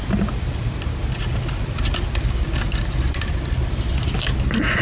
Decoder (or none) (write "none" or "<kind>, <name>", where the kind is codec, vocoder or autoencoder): none